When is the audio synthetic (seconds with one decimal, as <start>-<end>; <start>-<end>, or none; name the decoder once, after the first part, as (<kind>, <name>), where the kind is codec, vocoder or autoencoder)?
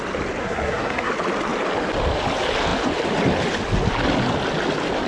0.4-1.1 (codec, SNAC)